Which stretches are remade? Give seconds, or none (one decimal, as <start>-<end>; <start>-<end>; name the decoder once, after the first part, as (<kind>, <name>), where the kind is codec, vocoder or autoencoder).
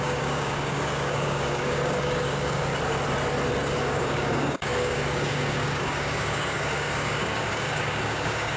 0.0-2.7 (codec, DAC); 3.8-8.6